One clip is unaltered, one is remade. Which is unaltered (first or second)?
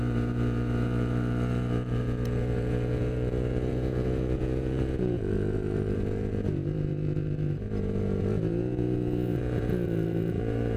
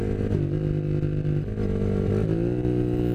second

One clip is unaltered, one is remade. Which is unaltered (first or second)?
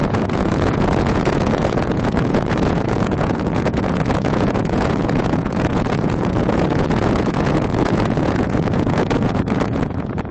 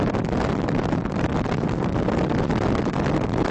second